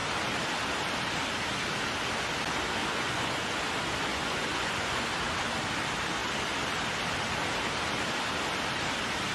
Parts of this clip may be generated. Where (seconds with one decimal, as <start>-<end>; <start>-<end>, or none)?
2.8-3.6; 4.1-5.1